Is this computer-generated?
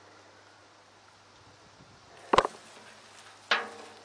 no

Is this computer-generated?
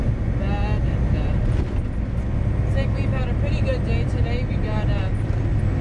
no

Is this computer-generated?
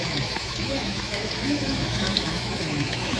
yes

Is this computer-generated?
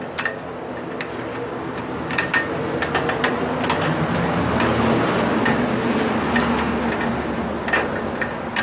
no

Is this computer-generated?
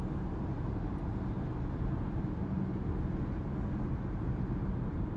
no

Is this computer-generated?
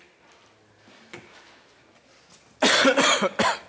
no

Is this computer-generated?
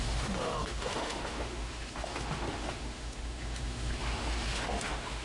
yes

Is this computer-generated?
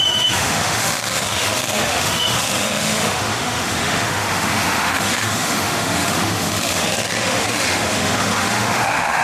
yes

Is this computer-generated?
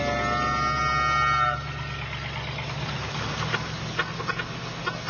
no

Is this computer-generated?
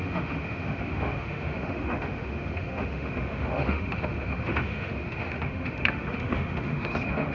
yes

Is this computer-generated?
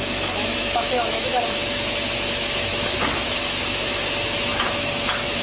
yes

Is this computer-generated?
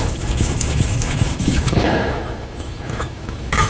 yes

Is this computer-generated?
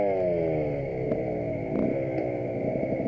no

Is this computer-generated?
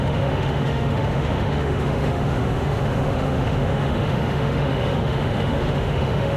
yes